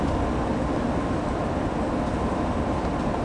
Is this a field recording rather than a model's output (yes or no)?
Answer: yes